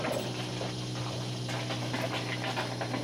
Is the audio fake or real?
real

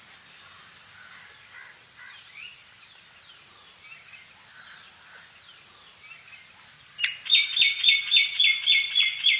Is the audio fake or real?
real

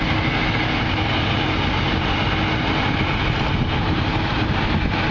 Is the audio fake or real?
real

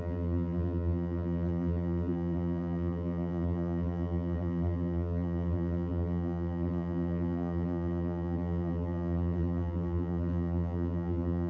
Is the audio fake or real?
fake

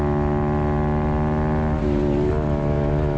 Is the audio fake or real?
real